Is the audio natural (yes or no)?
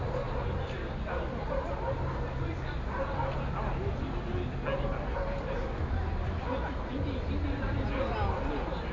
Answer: yes